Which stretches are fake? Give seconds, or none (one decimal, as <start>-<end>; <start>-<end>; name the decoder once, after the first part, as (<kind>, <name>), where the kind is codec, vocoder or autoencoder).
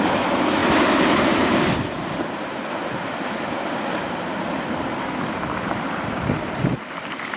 0.0-0.6 (vocoder, BigVGAN v2); 2.7-7.4